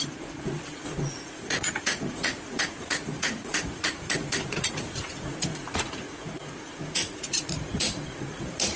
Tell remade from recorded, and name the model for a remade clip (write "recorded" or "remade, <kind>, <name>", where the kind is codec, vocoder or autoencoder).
remade, vocoder, Vocos